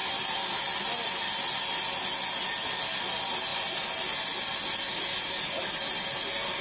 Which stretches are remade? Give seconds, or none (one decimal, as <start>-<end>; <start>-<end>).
none